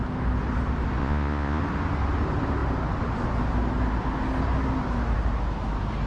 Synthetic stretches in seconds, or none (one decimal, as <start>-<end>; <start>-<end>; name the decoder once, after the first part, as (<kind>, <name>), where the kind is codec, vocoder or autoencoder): 1.0-1.6 (vocoder, Vocos)